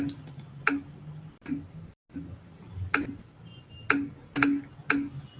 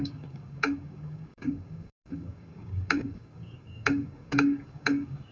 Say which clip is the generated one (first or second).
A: second